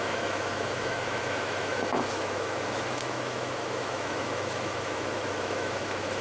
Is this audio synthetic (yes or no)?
yes